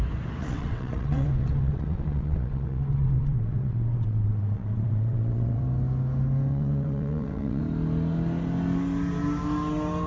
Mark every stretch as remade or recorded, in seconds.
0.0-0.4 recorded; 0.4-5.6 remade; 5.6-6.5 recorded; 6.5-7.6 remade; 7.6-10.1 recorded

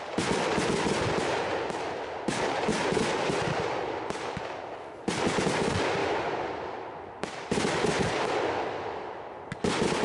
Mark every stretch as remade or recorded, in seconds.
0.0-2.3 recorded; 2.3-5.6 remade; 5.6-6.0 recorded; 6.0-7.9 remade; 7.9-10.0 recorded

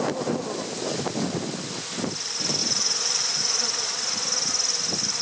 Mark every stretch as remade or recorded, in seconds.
0.0-2.6 recorded; 2.6-4.5 remade; 4.5-5.2 recorded

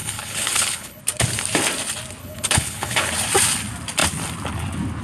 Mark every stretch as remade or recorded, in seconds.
0.0-1.0 remade; 1.0-2.2 recorded; 2.2-3.1 remade; 3.1-5.0 recorded

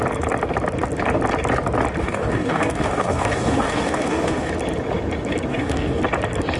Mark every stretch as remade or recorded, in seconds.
0.0-2.0 recorded; 2.0-4.5 remade; 4.5-5.5 recorded; 5.5-6.0 remade; 6.0-6.6 recorded

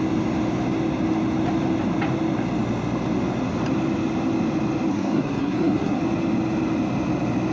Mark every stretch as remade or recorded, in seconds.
0.0-4.9 recorded; 4.9-6.0 remade; 6.0-7.5 recorded